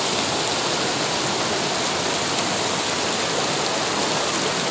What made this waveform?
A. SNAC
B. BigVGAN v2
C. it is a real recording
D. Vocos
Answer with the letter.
C